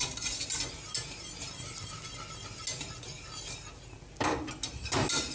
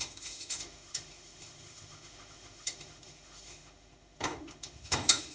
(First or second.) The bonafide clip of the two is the first